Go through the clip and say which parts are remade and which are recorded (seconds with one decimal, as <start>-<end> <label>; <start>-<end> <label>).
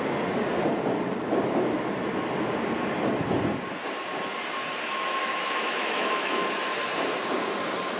0.0-5.2 recorded; 5.2-6.8 remade; 6.8-8.0 recorded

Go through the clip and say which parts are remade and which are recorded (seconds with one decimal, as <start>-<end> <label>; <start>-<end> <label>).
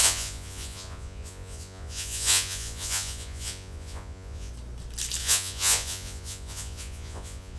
0.0-4.5 remade; 4.5-5.2 recorded; 5.2-7.6 remade